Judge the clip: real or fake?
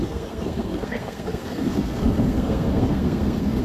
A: fake